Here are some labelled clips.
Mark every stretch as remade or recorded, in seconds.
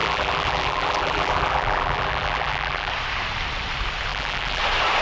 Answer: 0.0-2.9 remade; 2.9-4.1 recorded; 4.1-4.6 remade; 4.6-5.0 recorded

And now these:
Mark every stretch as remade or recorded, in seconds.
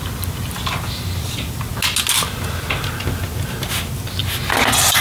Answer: 0.0-5.0 recorded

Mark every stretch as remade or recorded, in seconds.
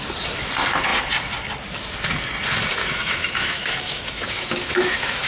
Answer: 0.0-2.8 recorded; 2.8-5.3 remade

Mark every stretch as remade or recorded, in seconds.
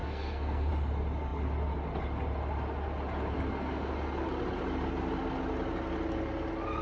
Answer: 0.0-0.7 remade; 0.7-6.8 recorded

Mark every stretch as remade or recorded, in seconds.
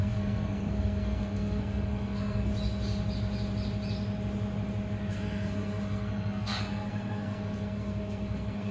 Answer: 0.0-2.5 remade; 2.5-5.1 recorded; 5.1-8.7 remade